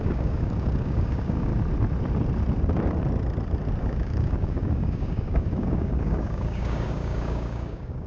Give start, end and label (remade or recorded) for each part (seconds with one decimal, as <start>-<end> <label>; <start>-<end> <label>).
0.0-1.5 remade; 1.5-3.8 recorded; 3.8-8.1 remade